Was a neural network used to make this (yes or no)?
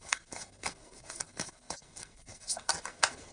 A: yes